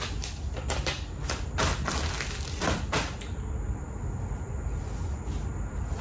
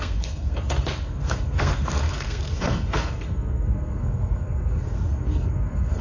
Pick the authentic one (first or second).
first